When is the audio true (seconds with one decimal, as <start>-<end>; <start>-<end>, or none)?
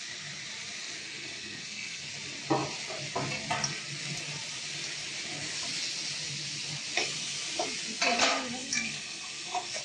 0.0-1.0; 2.1-8.2